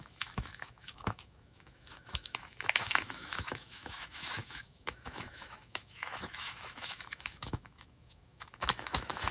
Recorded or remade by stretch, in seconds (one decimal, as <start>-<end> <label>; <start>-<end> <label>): 0.0-9.3 remade